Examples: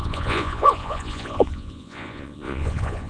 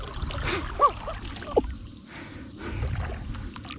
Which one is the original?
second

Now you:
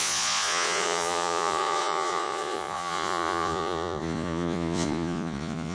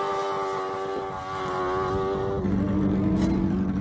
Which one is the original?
second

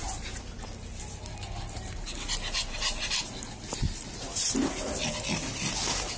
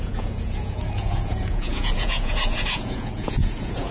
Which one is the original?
first